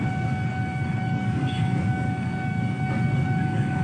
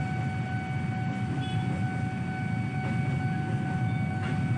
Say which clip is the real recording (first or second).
second